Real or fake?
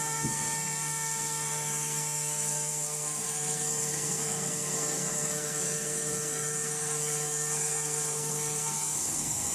fake